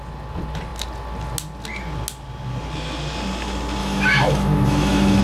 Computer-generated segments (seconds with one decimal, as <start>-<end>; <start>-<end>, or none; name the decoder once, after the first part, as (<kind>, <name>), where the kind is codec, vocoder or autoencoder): 3.8-5.2 (autoencoder, DAC-VAE)